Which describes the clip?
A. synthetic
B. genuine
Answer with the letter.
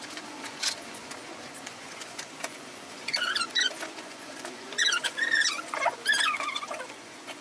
A